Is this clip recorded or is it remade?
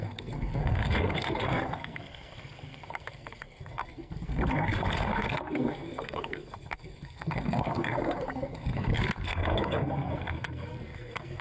remade